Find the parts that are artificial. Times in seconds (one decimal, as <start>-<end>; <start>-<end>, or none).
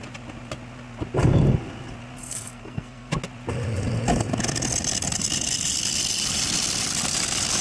2.2-3.1